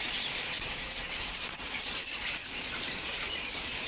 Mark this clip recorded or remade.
remade